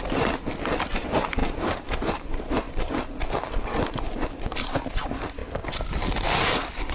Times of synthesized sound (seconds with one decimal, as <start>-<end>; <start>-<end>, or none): 1.4-2.9